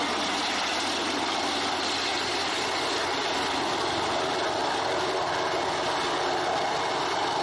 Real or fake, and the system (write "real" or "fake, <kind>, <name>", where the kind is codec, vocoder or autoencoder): real